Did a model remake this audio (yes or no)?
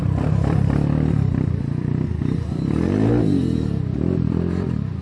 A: yes